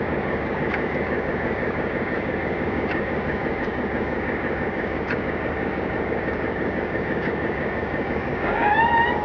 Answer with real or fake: fake